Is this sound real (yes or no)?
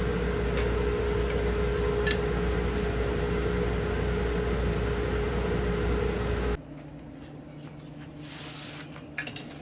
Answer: yes